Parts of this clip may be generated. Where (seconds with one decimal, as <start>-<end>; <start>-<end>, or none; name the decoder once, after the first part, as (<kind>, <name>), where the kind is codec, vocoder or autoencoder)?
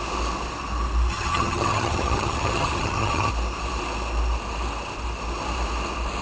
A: 1.1-3.3 (vocoder, HiFi-GAN)